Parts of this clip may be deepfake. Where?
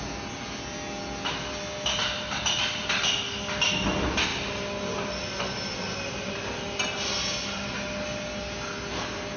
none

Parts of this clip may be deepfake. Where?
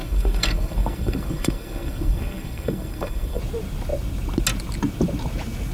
0.0-3.4 (codec, SNAC)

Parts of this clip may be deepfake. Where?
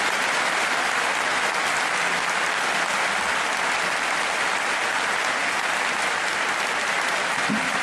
none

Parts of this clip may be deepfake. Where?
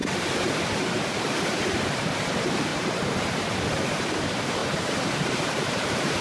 0.0-6.2 (vocoder, BigVGAN v2)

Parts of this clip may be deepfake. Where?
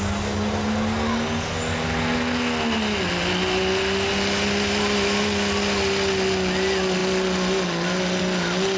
none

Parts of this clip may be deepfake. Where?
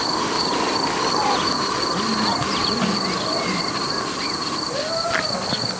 none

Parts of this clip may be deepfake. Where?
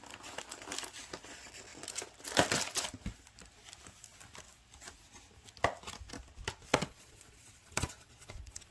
6.7-8.7 (vocoder, Vocos)